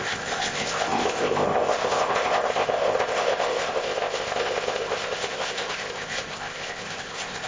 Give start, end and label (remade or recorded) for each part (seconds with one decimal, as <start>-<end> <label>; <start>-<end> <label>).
0.0-7.5 remade